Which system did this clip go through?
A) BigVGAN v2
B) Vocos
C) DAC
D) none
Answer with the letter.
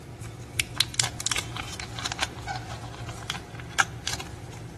D